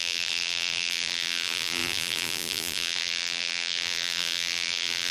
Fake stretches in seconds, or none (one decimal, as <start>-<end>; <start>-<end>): 0.0-5.1